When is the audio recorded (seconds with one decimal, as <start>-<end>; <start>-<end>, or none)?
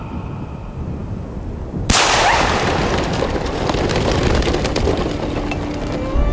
0.0-6.3